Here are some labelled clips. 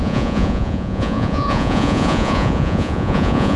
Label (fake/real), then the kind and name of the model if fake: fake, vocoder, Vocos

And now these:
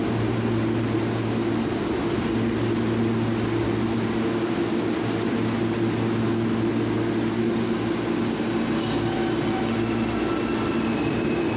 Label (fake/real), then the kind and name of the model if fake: real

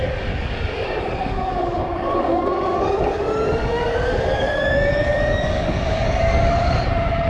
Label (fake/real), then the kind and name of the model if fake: fake, codec, DAC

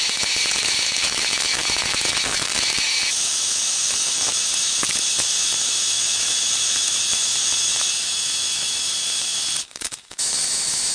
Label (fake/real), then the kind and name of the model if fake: fake, autoencoder, DAC-VAE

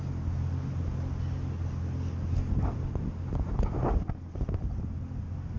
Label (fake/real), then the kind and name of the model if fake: real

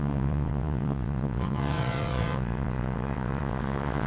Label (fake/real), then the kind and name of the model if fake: fake, vocoder, WaveNeXt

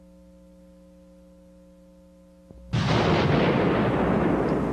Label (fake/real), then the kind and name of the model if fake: real